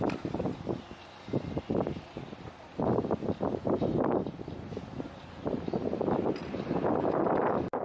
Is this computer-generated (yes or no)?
yes